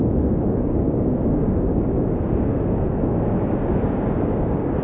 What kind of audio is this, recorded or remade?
remade